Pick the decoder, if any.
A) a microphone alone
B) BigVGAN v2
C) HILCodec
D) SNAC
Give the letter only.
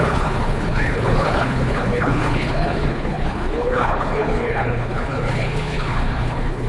C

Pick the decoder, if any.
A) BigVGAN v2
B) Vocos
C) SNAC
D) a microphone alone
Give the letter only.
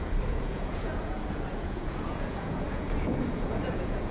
B